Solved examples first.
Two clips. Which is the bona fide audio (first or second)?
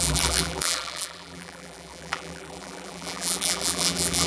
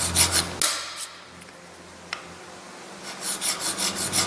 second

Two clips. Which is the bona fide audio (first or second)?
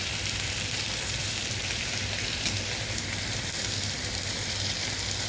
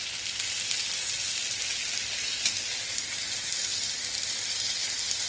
second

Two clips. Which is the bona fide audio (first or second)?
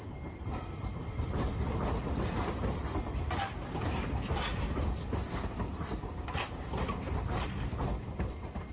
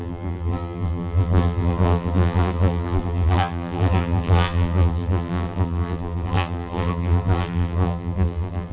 first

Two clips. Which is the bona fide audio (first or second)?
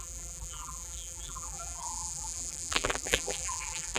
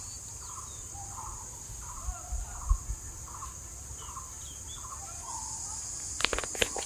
second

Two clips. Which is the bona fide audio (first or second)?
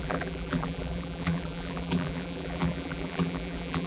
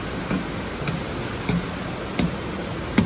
second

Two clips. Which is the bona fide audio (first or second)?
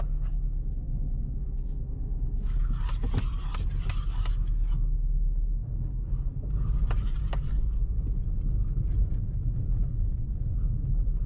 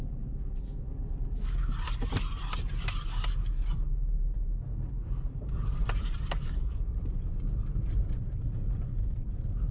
first